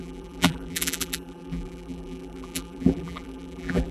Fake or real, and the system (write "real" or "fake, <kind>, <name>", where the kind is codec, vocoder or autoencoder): fake, vocoder, BigVGAN v2